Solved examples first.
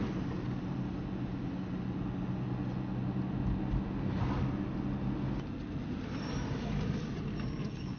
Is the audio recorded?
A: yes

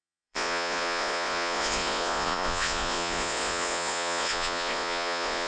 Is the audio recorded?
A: no